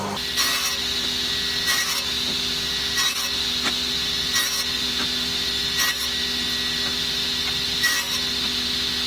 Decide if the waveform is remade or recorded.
recorded